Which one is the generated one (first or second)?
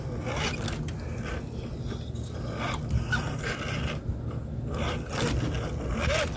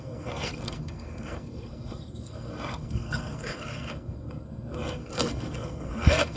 second